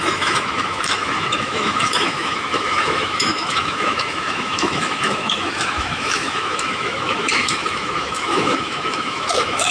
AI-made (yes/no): yes